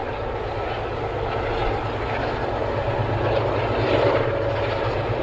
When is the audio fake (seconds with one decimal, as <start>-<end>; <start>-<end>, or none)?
none